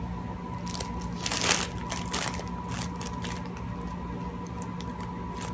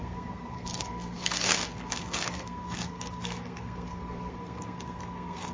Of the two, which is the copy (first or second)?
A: second